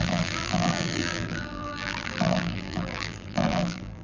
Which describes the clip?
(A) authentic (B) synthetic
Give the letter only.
B